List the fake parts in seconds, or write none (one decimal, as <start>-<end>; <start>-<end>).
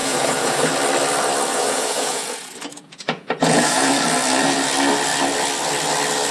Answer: 0.0-0.7; 1.5-3.9